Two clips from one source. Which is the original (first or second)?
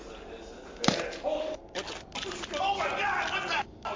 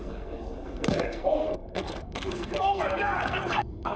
first